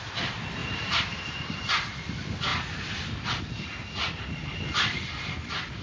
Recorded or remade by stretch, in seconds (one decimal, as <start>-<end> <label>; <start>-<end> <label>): 0.0-0.6 recorded; 0.6-1.7 remade; 1.7-5.8 recorded